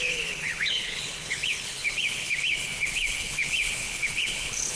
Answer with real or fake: fake